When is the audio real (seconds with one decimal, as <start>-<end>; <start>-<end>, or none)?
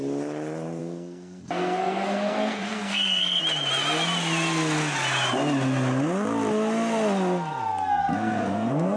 0.0-0.8; 3.4-8.0